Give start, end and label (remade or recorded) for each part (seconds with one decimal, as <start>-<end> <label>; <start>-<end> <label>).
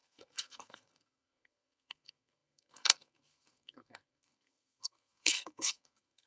0.0-6.3 remade